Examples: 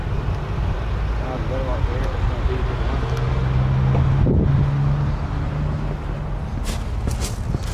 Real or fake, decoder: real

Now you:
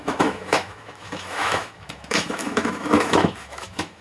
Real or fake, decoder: fake, autoencoder, DAC-VAE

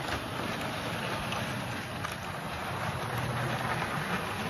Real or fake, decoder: real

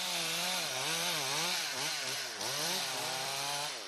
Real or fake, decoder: fake, vocoder, BigVGAN v2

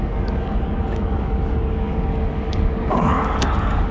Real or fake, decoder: fake, codec, DAC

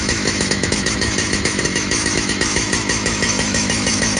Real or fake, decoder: fake, autoencoder, DAC-VAE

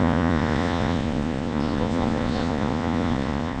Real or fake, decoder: fake, vocoder, Vocos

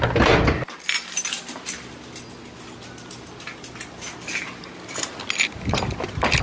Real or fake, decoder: real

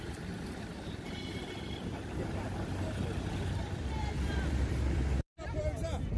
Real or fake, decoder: fake, vocoder, BigVGAN v2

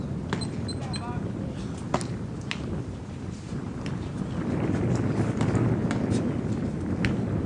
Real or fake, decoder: real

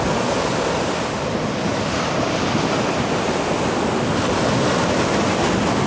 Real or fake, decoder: real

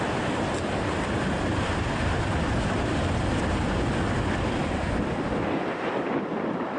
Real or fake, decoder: real